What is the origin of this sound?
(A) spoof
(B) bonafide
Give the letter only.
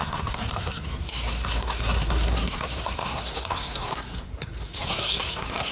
A